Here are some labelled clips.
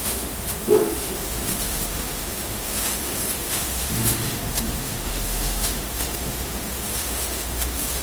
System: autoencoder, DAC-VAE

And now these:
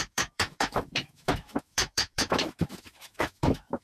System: autoencoder, DAC-VAE